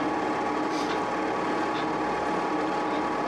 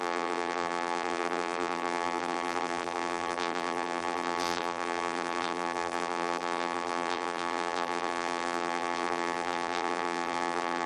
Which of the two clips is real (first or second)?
first